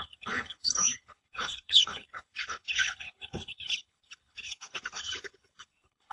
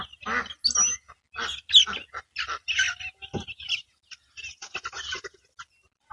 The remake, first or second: first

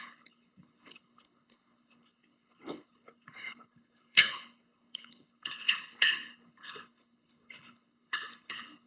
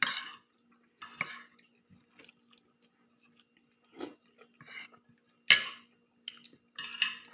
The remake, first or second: first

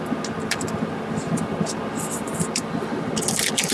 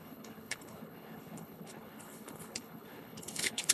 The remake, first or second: second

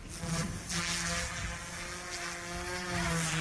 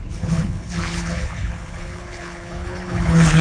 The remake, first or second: second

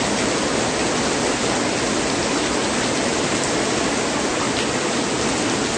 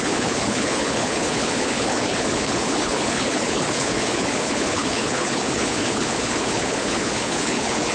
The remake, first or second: second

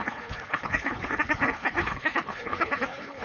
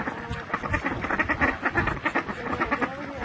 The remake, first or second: first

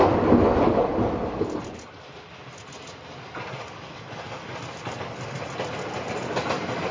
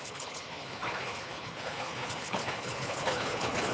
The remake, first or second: second